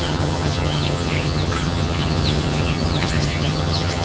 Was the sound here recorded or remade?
remade